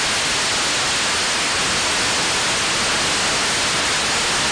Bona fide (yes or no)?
yes